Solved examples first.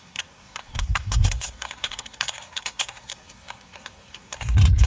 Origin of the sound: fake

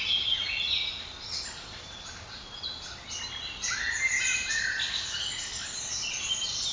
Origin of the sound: real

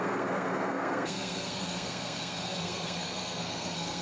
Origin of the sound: fake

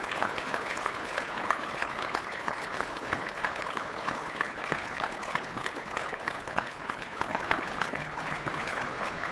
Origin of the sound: fake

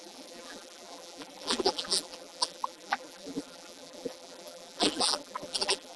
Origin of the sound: fake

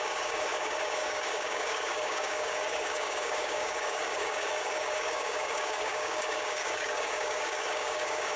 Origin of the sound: fake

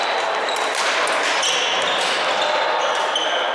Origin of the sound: real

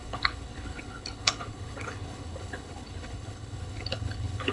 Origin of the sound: fake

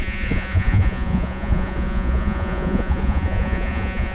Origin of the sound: fake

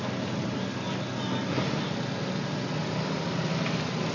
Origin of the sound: real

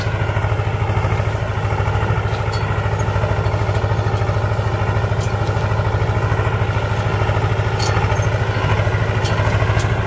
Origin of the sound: real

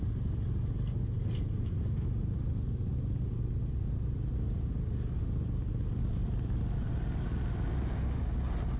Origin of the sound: real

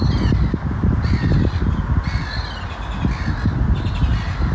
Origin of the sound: real